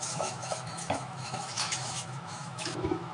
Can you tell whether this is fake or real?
fake